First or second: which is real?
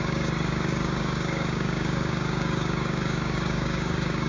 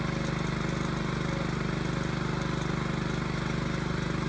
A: second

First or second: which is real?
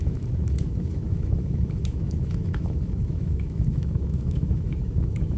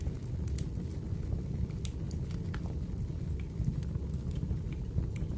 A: second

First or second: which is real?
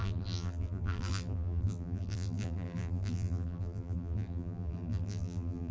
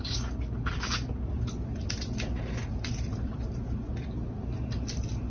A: second